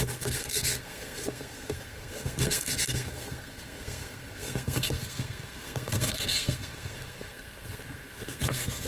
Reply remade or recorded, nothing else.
remade